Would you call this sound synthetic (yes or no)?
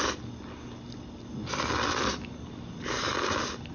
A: no